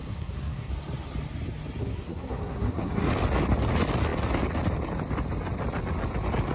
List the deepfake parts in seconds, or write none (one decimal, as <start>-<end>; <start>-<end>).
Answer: 0.0-0.7; 1.8-3.1